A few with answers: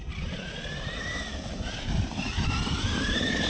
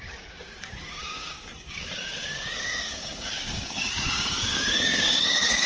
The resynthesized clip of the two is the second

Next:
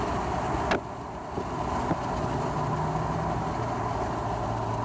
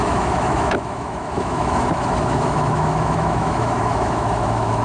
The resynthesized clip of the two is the second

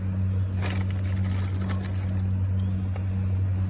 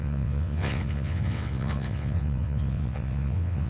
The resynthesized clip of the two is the second